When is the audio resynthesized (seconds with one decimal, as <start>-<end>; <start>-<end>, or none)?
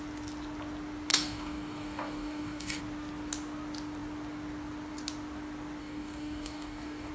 1.1-2.8; 5.8-7.1